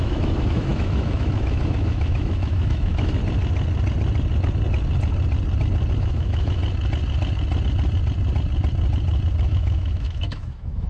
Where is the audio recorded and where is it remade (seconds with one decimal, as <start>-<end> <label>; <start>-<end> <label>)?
0.0-3.2 remade; 3.2-6.0 recorded; 6.0-6.6 remade; 6.6-9.4 recorded; 9.4-10.9 remade

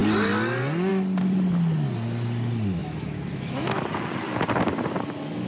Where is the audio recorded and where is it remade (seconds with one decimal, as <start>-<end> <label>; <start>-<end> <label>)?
0.0-2.8 recorded; 2.8-3.8 remade; 3.8-5.5 recorded

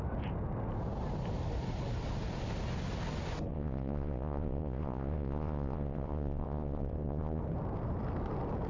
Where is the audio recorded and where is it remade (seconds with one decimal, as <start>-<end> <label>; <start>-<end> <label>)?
0.0-3.5 recorded; 3.5-7.4 remade; 7.4-8.7 recorded

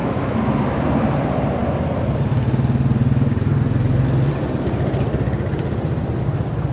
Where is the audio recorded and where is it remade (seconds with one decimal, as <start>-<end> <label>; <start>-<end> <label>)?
0.0-0.6 remade; 0.6-6.7 recorded

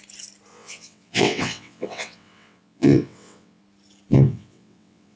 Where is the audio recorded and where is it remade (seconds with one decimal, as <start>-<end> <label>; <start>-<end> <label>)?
0.0-0.5 recorded; 0.5-3.6 remade; 3.6-4.1 recorded; 4.1-5.2 remade

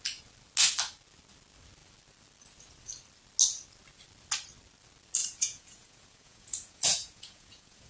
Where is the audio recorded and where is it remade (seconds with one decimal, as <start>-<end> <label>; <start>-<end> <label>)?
0.0-5.2 recorded; 5.2-7.9 remade